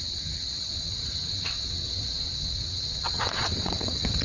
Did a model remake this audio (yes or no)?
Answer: yes